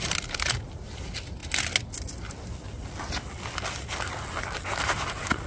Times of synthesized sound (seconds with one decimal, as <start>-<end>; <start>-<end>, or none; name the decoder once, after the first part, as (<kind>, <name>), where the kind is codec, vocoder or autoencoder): none